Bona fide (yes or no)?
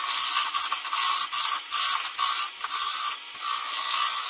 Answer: yes